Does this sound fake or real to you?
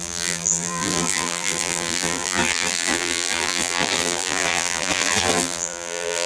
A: fake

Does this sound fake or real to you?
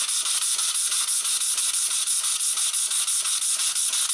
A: real